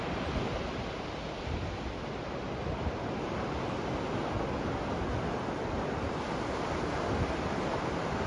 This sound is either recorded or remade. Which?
recorded